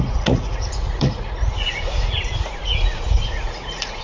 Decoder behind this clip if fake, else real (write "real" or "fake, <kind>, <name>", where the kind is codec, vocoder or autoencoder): fake, vocoder, Vocos